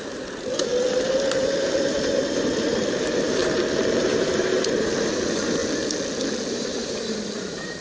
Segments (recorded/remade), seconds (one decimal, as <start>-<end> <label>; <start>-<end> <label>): 0.0-0.7 remade; 0.7-1.3 recorded; 1.3-3.4 remade; 3.4-4.0 recorded; 4.0-5.6 remade; 5.6-6.5 recorded; 6.5-7.8 remade

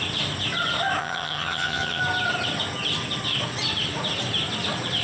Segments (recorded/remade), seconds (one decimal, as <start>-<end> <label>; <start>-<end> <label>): 0.0-1.0 recorded; 1.0-2.0 remade; 2.0-5.0 recorded

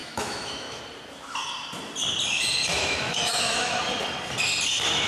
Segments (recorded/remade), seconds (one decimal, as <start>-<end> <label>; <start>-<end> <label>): 0.0-0.8 remade; 0.8-2.7 recorded; 2.7-3.8 remade; 3.8-5.1 recorded

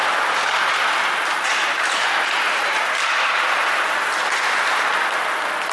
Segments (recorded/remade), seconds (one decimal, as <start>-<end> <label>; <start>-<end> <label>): 0.0-0.6 remade; 0.6-1.5 recorded; 1.5-4.9 remade; 4.9-5.7 recorded

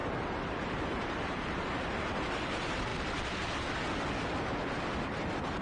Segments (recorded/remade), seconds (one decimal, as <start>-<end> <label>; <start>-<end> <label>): 0.0-2.9 remade; 2.9-4.7 recorded; 4.7-5.6 remade

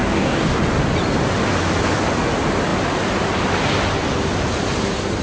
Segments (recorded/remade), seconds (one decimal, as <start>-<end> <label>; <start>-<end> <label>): 0.0-0.6 remade; 0.6-5.2 recorded

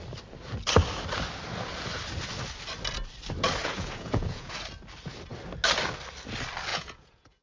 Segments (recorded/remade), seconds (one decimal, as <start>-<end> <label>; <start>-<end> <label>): 0.0-3.6 recorded; 3.6-4.5 remade; 4.5-6.7 recorded; 6.7-7.4 remade

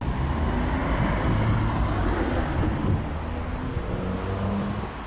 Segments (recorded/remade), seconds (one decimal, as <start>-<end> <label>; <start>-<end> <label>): 0.0-5.1 recorded